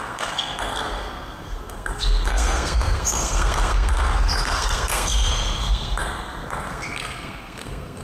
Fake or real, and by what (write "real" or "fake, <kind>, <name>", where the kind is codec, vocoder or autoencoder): fake, codec, SNAC